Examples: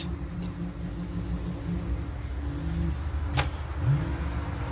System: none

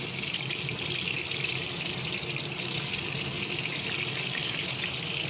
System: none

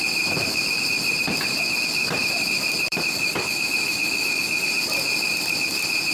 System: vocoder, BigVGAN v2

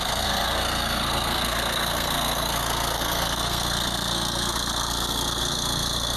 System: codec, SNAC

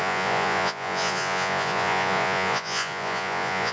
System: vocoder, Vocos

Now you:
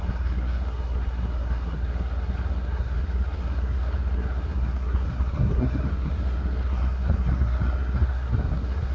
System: codec, SNAC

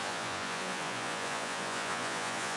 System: vocoder, Vocos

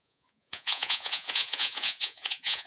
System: vocoder, Vocos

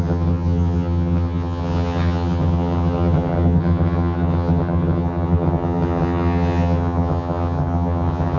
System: vocoder, HiFi-GAN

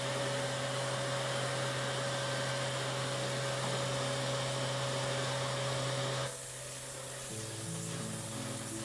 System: none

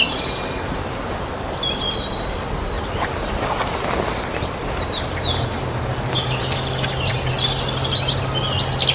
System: none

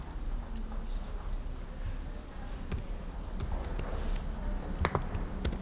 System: none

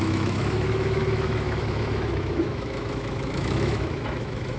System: autoencoder, DAC-VAE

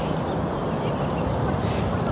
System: none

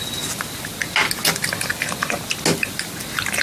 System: none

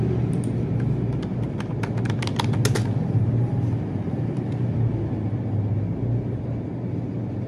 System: none